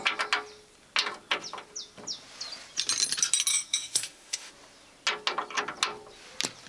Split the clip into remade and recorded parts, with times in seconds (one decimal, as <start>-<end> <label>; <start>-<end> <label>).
0.0-3.5 recorded; 3.5-4.5 remade; 4.5-6.7 recorded